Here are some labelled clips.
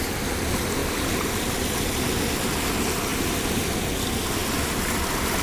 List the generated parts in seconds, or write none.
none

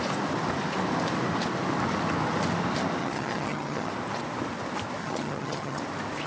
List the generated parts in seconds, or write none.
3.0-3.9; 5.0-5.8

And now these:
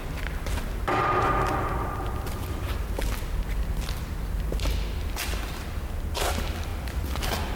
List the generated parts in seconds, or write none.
none

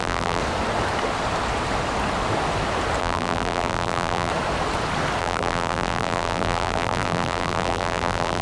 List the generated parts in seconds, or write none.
0.0-0.4; 3.0-4.3; 5.2-8.4

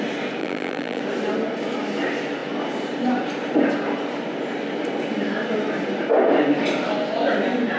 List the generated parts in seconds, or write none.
0.4-1.0

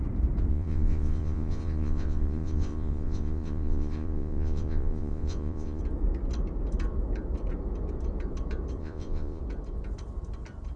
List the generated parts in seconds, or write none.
0.5-5.8; 8.8-9.4

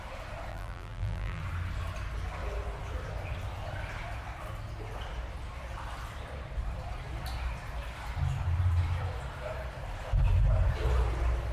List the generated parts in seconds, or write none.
0.5-1.4

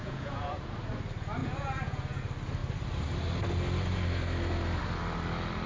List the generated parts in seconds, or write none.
0.0-0.7; 1.4-2.2